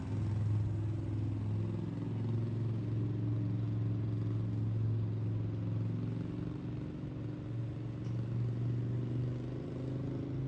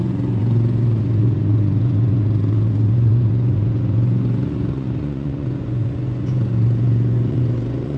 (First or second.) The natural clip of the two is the first